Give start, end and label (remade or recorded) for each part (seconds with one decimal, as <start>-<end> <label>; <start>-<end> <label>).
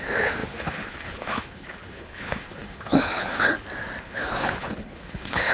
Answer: 0.0-3.5 remade; 3.5-4.0 recorded; 4.0-5.5 remade